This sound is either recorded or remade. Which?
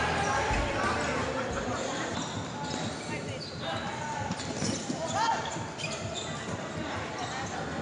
recorded